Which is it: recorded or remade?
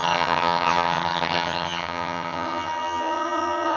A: remade